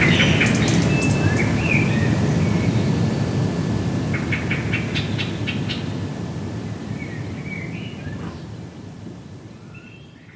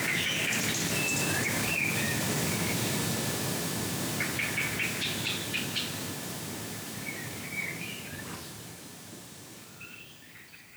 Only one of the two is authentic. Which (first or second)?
first